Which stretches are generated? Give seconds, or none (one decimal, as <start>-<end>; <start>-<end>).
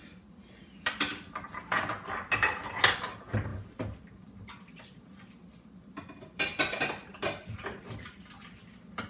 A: none